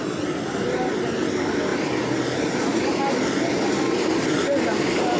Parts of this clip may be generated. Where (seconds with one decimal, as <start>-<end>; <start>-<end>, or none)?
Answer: none